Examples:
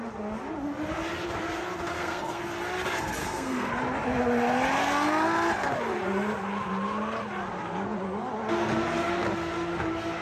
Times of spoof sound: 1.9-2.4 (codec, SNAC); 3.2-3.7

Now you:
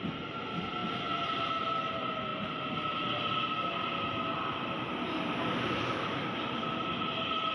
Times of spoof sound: none

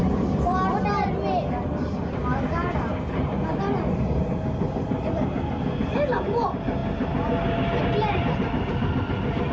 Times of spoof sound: none

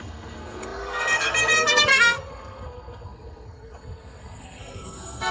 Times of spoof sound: 0.0-5.3 (codec, SNAC)

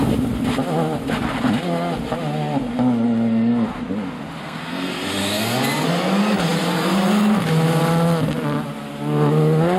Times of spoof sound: 4.4-4.9 (codec, SNAC)

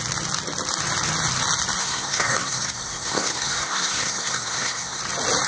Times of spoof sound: 1.8-5.0 (codec, SNAC)

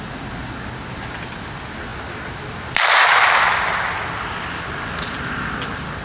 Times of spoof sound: none

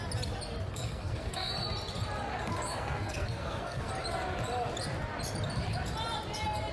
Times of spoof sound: 0.7-1.5 (codec, SNAC); 2.3-3.9